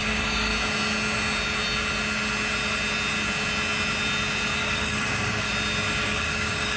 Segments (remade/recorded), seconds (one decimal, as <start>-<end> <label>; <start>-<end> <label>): 0.0-0.5 remade; 0.5-4.6 recorded; 4.6-5.5 remade; 5.5-6.0 recorded; 6.0-6.8 remade